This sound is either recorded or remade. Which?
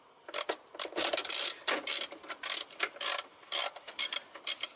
recorded